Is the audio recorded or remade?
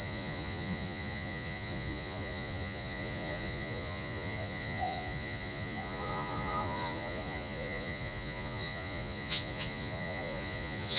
remade